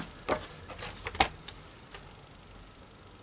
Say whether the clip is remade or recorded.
recorded